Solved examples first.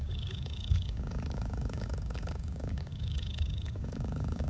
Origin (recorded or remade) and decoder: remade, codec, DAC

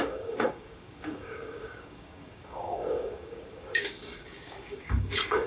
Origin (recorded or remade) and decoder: remade, codec, DAC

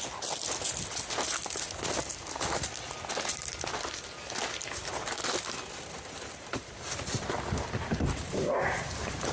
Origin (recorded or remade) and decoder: recorded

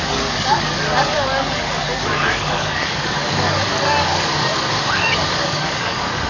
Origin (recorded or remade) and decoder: remade, codec, DAC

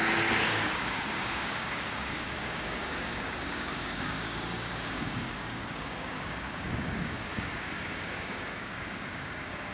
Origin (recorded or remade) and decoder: remade, codec, DAC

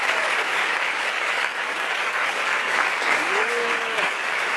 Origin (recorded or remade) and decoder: remade, codec, DAC